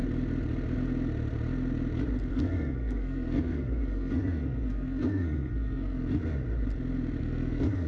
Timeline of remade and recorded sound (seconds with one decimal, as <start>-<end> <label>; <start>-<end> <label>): 0.0-2.3 recorded; 2.3-6.2 remade; 6.2-7.2 recorded; 7.2-7.9 remade